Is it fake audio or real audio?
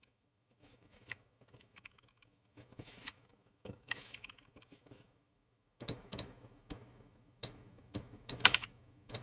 fake